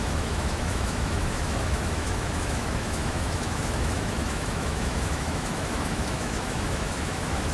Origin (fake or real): fake